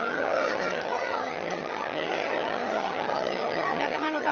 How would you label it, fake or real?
fake